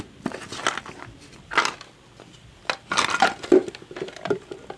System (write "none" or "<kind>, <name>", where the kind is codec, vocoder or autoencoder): none